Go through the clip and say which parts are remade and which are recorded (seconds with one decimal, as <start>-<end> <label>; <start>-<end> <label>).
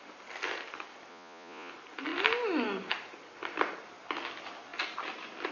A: 0.0-1.1 recorded; 1.1-1.7 remade; 1.7-5.5 recorded